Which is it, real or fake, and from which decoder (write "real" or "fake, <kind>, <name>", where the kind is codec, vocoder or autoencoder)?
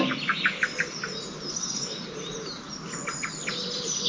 real